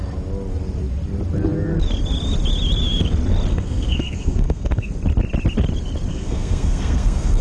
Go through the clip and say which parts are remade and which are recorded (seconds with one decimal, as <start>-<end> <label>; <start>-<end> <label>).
0.0-3.5 recorded; 3.5-4.9 remade; 4.9-6.1 recorded; 6.1-7.4 remade